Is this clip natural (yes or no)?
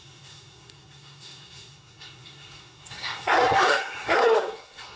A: no